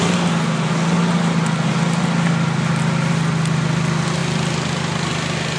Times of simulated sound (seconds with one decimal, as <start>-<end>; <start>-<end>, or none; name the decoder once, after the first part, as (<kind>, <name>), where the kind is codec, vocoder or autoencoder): none